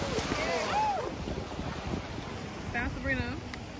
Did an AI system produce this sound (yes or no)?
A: no